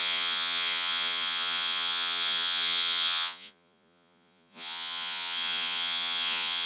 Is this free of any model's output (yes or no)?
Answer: no